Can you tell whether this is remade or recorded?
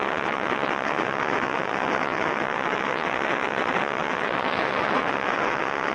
remade